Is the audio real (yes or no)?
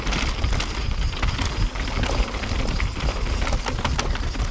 yes